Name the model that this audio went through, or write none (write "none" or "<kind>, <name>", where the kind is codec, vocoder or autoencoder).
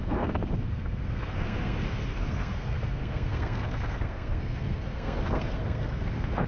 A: codec, SNAC